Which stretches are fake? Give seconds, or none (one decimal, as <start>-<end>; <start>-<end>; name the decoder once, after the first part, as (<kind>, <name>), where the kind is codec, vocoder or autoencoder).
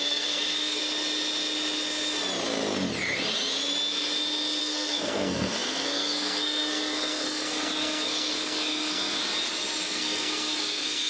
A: 0.0-0.8 (codec, SNAC); 4.6-9.2; 9.8-11.1